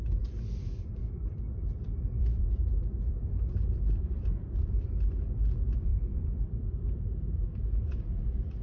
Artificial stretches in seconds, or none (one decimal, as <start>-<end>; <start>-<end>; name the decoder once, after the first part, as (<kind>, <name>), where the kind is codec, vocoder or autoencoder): 1.0-4.9 (vocoder, BigVGAN v2); 5.9-8.6